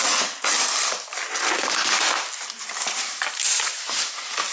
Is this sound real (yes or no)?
yes